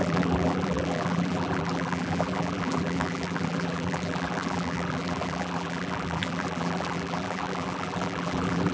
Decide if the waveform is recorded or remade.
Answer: remade